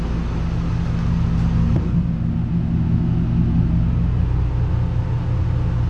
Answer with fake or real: real